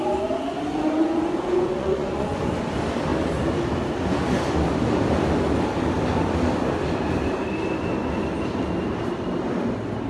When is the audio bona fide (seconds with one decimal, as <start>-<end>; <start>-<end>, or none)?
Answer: 0.0-1.0; 2.5-10.1